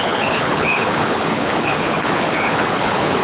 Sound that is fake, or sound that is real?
fake